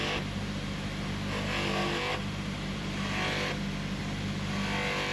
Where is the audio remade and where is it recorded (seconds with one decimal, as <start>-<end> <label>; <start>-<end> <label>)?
0.0-2.1 recorded; 2.1-4.0 remade; 4.0-5.1 recorded